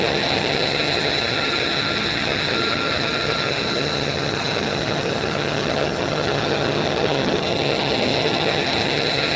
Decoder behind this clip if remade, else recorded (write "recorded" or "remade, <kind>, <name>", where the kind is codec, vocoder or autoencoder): remade, vocoder, HiFi-GAN